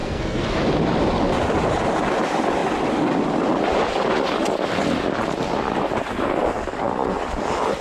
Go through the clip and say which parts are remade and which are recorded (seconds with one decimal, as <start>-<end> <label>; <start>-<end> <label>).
0.0-0.6 remade; 0.6-7.8 recorded